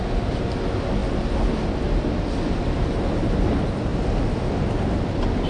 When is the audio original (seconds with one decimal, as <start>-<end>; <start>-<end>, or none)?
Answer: 0.0-5.5